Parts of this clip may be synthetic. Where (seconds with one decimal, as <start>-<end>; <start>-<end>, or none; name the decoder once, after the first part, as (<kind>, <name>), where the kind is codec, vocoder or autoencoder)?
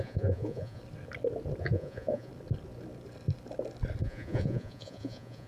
0.0-0.8 (vocoder, Vocos); 1.6-2.3; 4.0-5.5